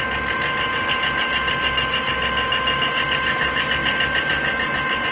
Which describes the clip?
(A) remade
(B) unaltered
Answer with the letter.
B